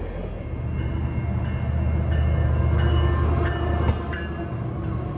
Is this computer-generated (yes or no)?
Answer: no